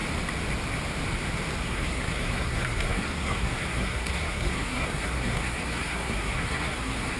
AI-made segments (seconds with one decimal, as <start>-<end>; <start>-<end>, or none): 1.6-7.2